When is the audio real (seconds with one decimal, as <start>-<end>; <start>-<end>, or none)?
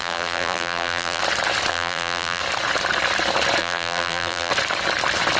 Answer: 1.2-1.7; 2.4-3.6; 4.5-5.4